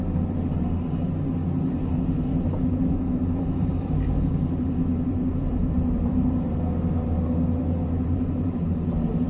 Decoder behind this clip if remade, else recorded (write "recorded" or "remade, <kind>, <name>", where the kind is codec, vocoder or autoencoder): remade, vocoder, BigVGAN v2